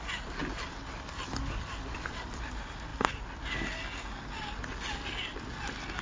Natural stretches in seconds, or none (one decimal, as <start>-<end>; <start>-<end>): 0.0-6.0